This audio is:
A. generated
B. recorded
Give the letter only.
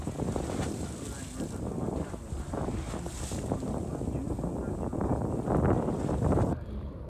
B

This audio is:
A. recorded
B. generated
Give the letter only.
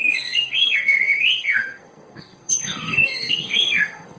B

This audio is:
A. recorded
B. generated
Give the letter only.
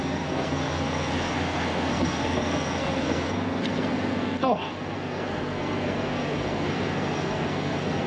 B